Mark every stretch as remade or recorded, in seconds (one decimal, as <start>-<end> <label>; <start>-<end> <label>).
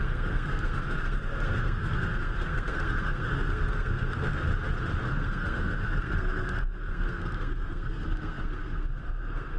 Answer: 0.0-4.5 remade; 4.5-5.0 recorded; 5.0-9.6 remade